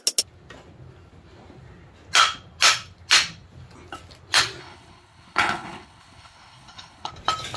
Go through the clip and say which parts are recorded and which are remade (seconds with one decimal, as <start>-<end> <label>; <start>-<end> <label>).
0.0-4.6 recorded; 4.6-7.1 remade; 7.1-7.6 recorded